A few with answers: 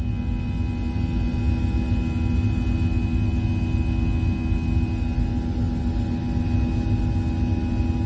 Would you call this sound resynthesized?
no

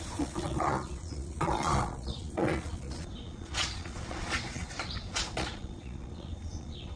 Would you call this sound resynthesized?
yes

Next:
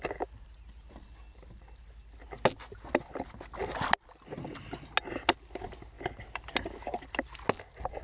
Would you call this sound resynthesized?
no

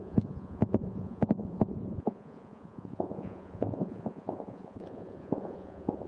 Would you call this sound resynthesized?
yes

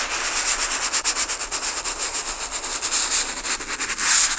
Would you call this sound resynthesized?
no